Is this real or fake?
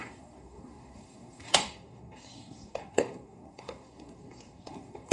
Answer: fake